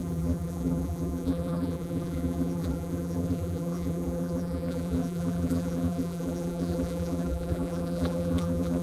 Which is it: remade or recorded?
remade